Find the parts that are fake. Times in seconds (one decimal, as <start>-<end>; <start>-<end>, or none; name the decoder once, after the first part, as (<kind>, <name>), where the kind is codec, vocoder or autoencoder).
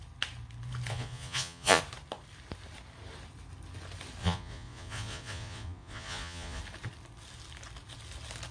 0.9-1.8 (vocoder, Vocos); 4.2-6.6